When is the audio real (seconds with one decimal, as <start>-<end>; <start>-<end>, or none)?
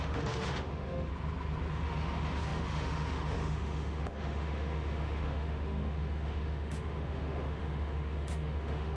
1.1-1.7